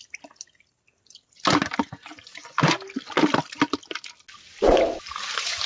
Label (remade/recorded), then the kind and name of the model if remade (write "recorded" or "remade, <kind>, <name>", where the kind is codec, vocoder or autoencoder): recorded